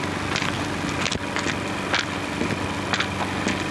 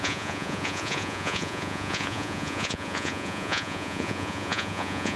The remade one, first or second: second